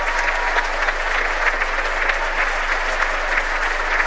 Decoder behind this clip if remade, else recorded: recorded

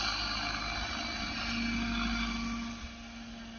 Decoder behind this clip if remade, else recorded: recorded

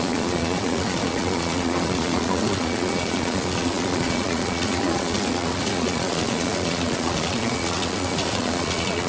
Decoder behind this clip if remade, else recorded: remade, vocoder, Vocos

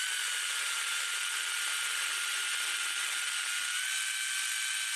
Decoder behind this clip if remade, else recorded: recorded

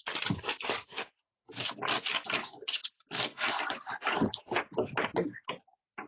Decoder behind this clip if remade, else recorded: recorded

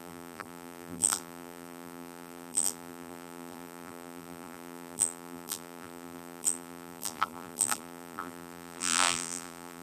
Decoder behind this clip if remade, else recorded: remade, vocoder, BigVGAN v2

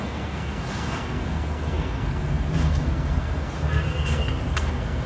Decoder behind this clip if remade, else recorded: remade, codec, SNAC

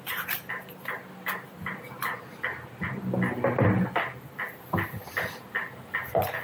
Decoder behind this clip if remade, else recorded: recorded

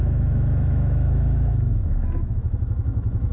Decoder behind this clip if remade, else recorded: remade, autoencoder, DAC-VAE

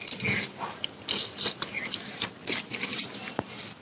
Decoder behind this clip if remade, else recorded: recorded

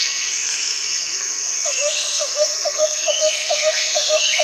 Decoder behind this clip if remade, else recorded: remade, codec, SNAC